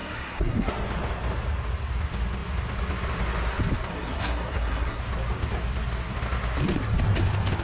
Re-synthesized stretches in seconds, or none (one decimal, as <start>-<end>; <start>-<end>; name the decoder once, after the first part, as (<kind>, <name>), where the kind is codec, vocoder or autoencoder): 0.0-0.7 (codec, SNAC); 3.9-5.0